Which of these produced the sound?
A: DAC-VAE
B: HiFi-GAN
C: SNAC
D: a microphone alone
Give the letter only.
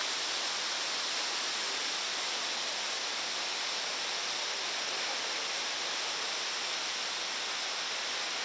D